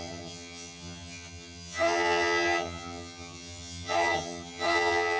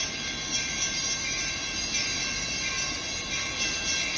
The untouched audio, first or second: second